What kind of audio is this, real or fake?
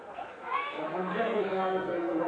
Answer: fake